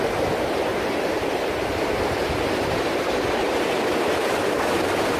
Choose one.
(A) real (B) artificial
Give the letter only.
B